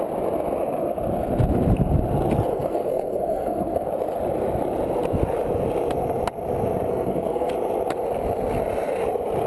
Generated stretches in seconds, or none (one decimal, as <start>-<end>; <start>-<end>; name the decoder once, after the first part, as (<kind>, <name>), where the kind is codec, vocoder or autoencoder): 2.5-3.9 (codec, SNAC); 6.9-7.5